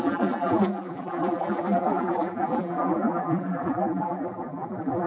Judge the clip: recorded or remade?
remade